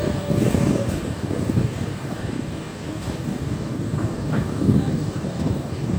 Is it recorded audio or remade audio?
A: remade